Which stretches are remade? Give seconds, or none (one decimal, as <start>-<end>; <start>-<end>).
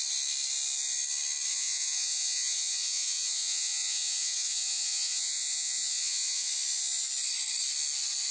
1.5-6.5